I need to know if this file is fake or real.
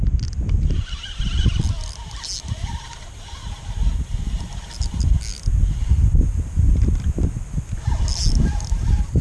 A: real